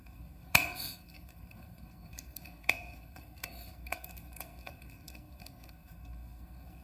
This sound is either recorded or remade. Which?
remade